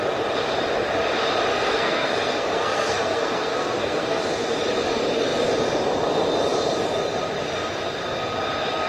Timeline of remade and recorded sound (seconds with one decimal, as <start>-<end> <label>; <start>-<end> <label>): 0.0-1.5 recorded; 1.5-4.2 remade; 4.2-8.9 recorded